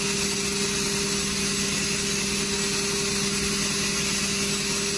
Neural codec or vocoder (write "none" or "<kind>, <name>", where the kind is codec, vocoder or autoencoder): none